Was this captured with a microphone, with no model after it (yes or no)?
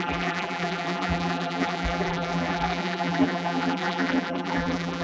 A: no